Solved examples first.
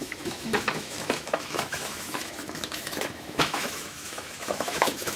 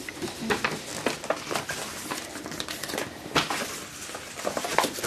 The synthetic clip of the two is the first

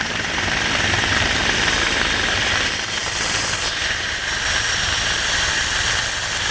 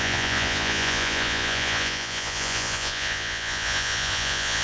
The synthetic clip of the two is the second